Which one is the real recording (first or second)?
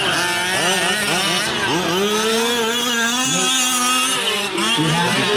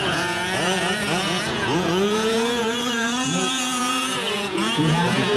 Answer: first